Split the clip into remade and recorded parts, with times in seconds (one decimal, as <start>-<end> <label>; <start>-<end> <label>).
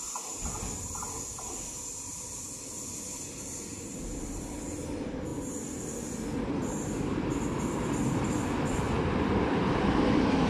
0.0-10.5 recorded